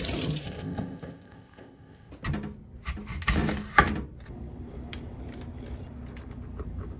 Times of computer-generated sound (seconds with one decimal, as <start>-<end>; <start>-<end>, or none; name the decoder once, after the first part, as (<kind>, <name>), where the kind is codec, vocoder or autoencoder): 0.4-2.1 (codec, ZipCodec)